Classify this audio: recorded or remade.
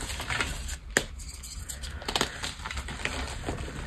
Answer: recorded